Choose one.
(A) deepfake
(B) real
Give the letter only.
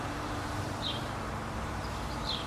A